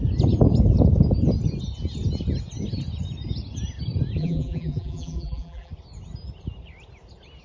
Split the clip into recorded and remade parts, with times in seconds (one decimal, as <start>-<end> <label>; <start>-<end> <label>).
0.0-4.2 recorded; 4.2-5.7 remade; 5.7-7.4 recorded